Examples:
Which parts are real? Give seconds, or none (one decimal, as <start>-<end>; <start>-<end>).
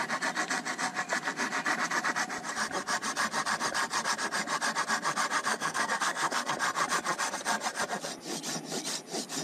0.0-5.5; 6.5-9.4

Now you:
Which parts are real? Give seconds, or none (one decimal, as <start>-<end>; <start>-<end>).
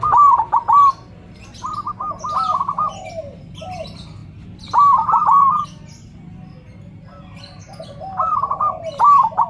0.0-9.5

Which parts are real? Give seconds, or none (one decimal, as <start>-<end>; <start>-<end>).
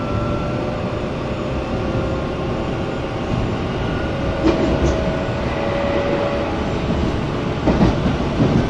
0.0-8.7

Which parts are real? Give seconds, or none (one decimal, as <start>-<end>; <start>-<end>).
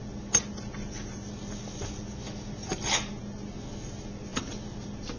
0.0-5.2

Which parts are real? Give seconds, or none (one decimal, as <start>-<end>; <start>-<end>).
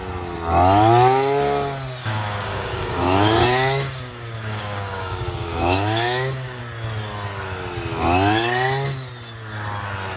0.0-2.0; 6.6-10.2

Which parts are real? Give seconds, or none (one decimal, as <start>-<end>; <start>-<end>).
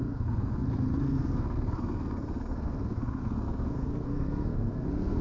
none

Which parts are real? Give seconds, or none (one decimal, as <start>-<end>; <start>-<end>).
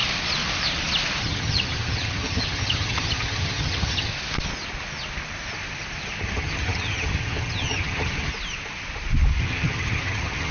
0.0-1.2; 4.1-6.2; 8.3-9.4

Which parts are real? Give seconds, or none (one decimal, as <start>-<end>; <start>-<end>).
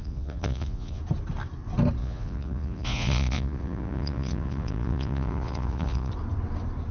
1.0-2.0; 6.1-6.9